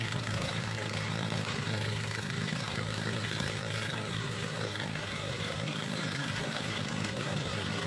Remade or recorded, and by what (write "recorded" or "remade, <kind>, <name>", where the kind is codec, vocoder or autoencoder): remade, codec, SNAC